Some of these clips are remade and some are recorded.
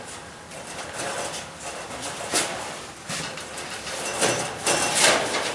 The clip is remade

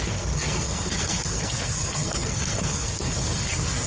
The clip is remade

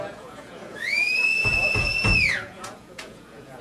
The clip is remade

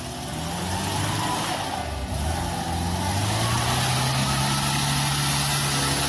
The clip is recorded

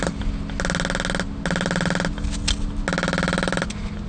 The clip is recorded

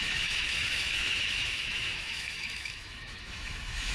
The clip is remade